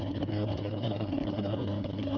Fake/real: fake